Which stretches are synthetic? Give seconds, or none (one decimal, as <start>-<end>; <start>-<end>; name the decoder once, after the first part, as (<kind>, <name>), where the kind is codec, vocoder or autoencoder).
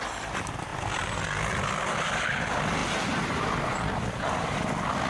none